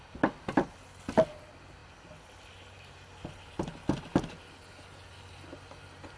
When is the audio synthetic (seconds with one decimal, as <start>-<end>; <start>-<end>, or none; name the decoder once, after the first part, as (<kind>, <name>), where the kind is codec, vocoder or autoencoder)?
none